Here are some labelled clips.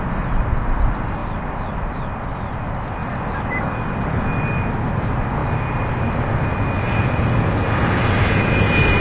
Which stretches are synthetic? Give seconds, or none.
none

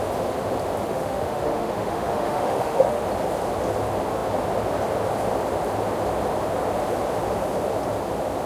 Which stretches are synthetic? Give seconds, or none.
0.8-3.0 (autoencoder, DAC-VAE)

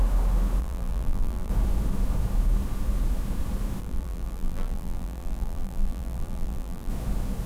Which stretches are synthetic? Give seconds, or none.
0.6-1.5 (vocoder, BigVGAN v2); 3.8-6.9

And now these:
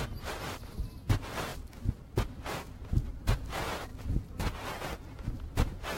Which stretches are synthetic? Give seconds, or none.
none